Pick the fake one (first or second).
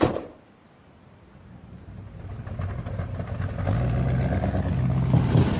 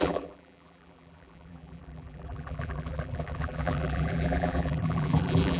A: second